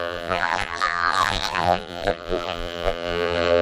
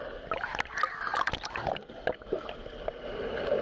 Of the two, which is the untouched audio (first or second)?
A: second